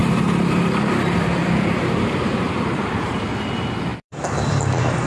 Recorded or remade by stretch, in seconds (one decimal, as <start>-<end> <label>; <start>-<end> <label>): 0.0-3.1 remade; 3.1-3.9 recorded; 3.9-5.1 remade